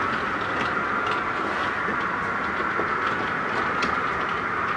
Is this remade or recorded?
recorded